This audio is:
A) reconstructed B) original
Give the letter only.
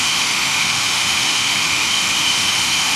A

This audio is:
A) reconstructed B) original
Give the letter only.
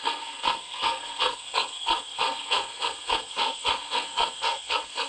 A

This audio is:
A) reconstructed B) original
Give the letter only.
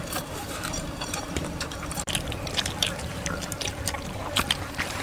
A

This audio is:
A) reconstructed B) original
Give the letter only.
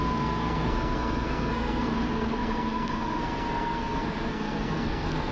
A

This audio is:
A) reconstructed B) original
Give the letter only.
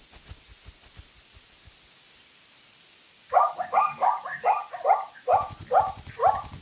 B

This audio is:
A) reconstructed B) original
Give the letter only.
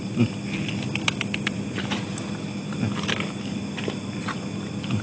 B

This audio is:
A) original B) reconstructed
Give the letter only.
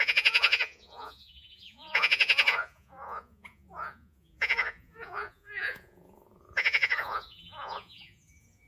B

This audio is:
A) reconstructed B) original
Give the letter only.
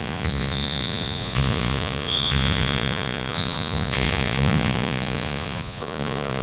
A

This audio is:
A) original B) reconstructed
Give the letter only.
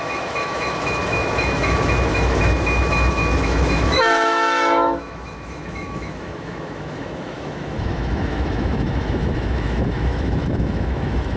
B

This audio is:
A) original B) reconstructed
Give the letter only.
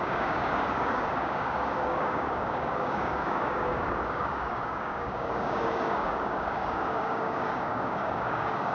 B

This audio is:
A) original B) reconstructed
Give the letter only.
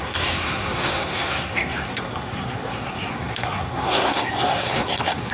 B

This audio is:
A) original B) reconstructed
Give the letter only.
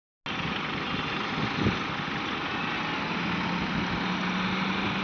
A